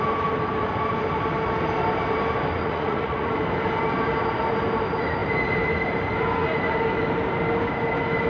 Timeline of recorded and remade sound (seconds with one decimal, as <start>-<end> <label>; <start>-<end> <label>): 0.0-2.6 recorded; 2.6-3.3 remade; 3.3-8.3 recorded